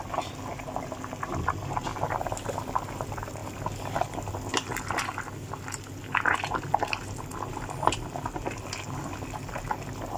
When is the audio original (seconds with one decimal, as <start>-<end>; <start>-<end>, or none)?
0.0-10.2